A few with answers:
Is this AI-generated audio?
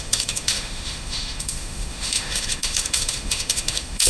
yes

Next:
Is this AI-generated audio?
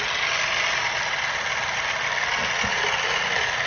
no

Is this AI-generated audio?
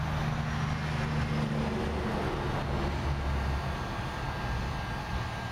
no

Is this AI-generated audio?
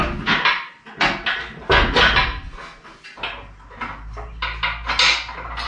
no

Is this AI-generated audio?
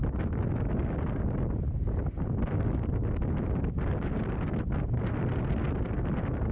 no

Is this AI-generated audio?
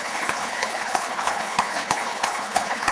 yes